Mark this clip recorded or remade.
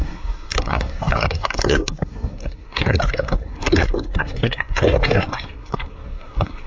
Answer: remade